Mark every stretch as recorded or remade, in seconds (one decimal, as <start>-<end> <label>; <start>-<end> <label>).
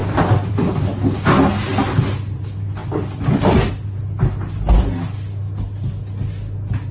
0.0-6.9 recorded